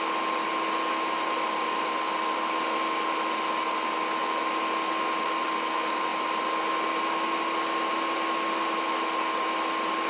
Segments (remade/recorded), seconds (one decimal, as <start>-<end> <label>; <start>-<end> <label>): 0.0-10.1 recorded